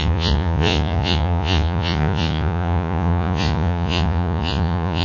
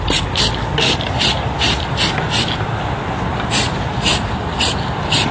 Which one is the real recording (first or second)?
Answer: second